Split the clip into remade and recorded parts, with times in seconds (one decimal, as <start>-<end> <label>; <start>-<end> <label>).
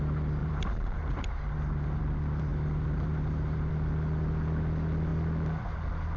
0.0-0.4 recorded; 0.4-2.0 remade; 2.0-2.5 recorded; 2.5-3.7 remade; 3.7-6.2 recorded